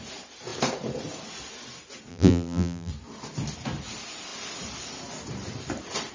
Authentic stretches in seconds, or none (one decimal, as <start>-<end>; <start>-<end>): 0.0-2.1; 2.9-6.1